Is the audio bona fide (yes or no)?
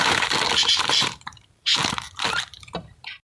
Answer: no